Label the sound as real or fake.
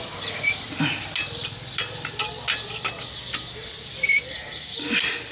real